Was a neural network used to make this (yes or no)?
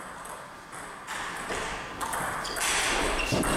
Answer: no